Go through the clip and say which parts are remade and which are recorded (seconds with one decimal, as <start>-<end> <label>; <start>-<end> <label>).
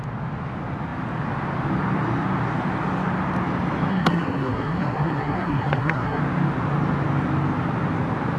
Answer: 0.0-3.9 recorded; 3.9-6.2 remade; 6.2-8.4 recorded